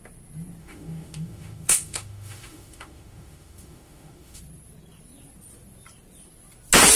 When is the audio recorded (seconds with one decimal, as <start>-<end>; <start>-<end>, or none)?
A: 0.0-0.6; 4.4-7.0